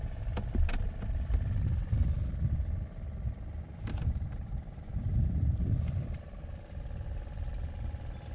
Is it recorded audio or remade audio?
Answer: recorded